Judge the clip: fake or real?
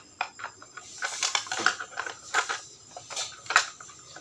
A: real